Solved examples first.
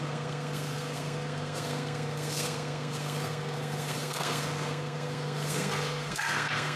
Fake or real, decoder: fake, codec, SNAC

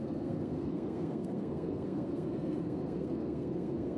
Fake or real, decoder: fake, codec, SNAC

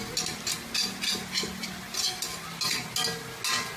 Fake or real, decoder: real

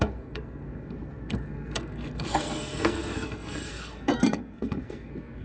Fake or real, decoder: fake, codec, SNAC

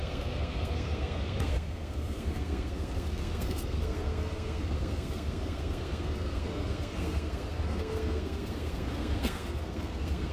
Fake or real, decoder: fake, codec, SNAC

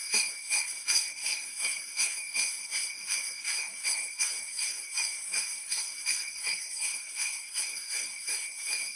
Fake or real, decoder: fake, codec, SNAC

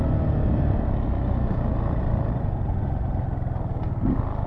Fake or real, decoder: real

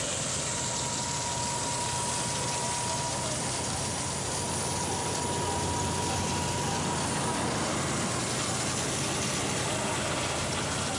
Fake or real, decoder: real